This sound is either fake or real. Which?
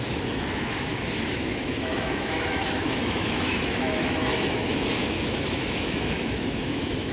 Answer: fake